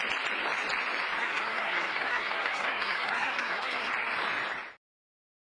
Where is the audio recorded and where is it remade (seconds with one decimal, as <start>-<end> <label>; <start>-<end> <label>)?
0.0-1.2 recorded; 1.2-3.9 remade; 3.9-5.4 recorded